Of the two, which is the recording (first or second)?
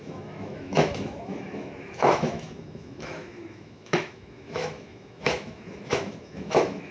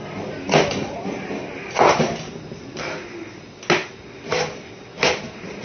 second